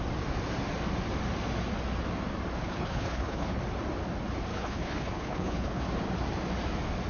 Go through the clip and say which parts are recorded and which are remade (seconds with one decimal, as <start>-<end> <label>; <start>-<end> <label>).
0.0-2.6 recorded; 2.6-3.6 remade; 3.6-4.5 recorded; 4.5-5.8 remade; 5.8-7.1 recorded